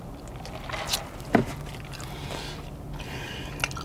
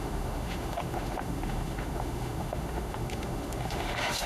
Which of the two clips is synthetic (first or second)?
second